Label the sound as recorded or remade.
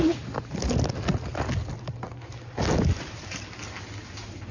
recorded